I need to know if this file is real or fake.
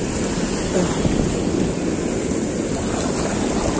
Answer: real